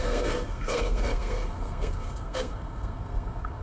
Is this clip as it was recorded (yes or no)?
no